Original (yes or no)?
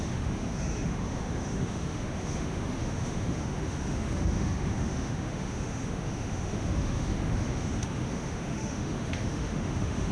no